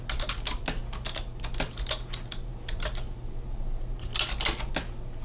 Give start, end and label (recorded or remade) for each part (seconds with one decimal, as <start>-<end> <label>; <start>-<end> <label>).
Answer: 0.0-5.2 recorded